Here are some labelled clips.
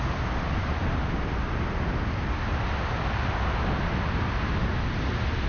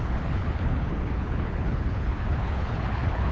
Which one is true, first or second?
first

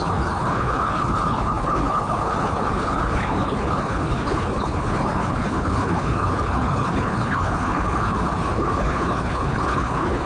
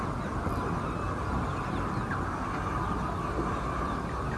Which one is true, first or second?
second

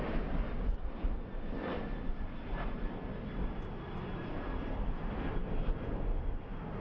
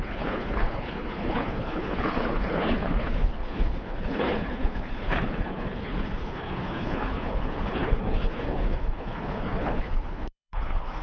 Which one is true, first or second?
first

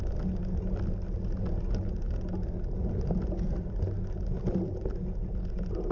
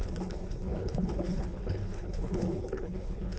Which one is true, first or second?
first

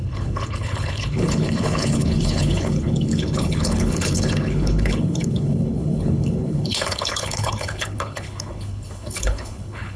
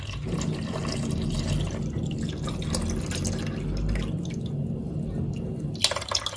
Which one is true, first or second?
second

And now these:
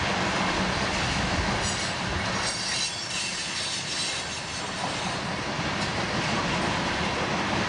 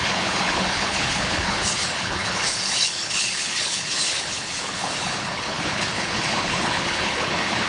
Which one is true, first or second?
first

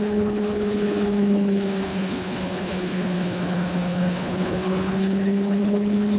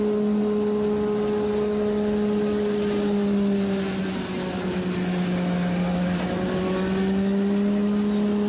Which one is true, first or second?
second